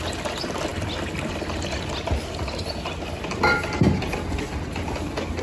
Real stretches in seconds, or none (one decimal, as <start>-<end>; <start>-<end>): 0.0-5.4